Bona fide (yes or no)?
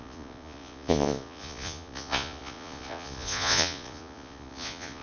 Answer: no